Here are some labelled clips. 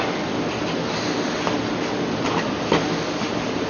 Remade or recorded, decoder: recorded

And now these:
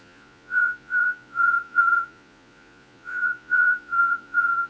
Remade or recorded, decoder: remade, vocoder, Vocos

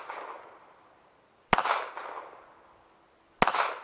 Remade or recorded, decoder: recorded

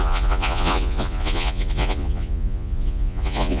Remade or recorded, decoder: remade, vocoder, Vocos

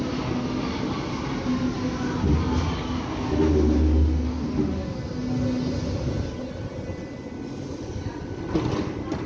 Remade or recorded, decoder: recorded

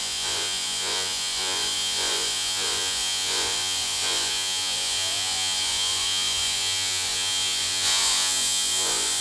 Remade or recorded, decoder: remade, vocoder, Vocos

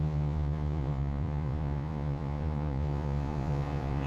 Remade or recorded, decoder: remade, vocoder, Vocos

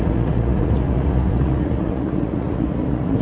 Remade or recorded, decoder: remade, vocoder, Vocos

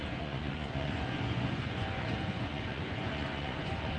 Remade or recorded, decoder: remade, vocoder, Vocos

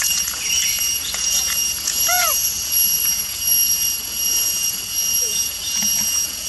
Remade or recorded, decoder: remade, vocoder, Vocos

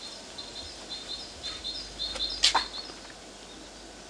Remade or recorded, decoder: recorded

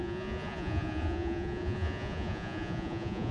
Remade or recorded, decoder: remade, vocoder, Vocos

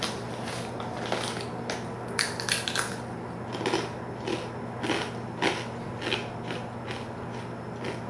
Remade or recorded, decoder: recorded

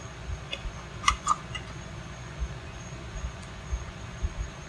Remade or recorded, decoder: remade, vocoder, Vocos